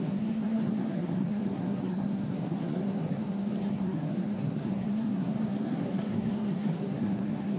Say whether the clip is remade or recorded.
remade